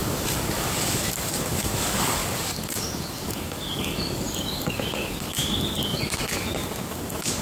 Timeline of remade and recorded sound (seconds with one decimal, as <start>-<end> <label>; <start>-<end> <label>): 0.0-7.4 remade